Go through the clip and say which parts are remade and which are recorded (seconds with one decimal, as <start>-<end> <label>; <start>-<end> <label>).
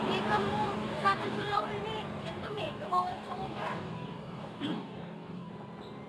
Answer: 0.0-0.4 recorded; 0.4-1.7 remade; 1.7-2.2 recorded; 2.2-5.5 remade; 5.5-6.1 recorded